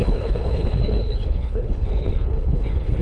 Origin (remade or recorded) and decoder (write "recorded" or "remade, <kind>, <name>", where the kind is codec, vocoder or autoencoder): remade, codec, HILCodec